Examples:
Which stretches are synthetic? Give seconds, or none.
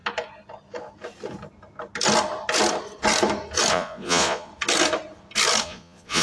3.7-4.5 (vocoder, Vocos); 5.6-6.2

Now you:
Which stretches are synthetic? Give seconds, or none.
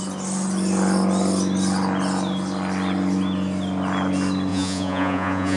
4.5-5.6 (vocoder, Vocos)